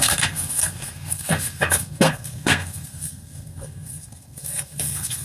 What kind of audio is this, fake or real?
fake